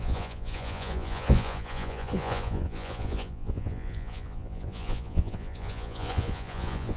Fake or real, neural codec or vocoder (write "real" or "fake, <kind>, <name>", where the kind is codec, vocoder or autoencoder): fake, vocoder, Vocos